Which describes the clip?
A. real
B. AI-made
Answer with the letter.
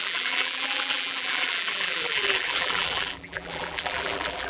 B